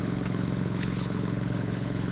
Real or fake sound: fake